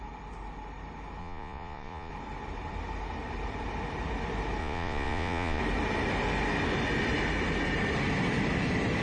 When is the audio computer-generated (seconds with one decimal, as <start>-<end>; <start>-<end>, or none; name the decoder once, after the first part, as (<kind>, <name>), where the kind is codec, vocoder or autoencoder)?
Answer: 1.2-2.1 (vocoder, Vocos); 4.6-5.6